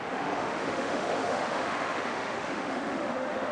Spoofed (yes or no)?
yes